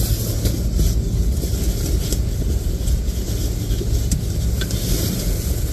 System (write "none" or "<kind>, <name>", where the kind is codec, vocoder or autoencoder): none